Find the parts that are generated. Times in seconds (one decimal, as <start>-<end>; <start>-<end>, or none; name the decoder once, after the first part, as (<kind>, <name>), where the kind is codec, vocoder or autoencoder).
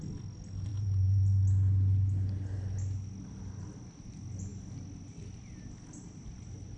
0.7-1.4 (vocoder, BigVGAN v2)